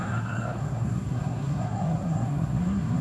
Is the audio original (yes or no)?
no